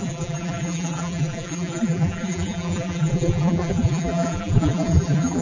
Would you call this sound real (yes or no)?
no